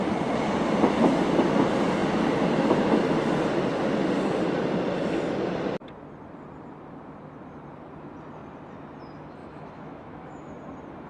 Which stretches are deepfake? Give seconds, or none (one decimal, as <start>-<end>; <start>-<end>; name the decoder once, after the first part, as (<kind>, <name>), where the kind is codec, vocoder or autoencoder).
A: 9.4-10.5 (autoencoder, DAC-VAE)